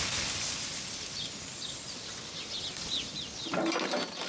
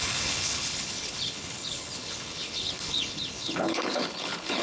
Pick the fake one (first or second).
second